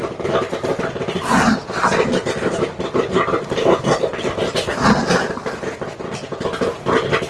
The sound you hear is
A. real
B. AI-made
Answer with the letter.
A